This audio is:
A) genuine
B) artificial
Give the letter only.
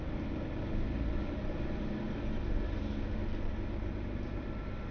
A